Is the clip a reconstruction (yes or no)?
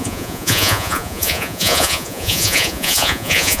yes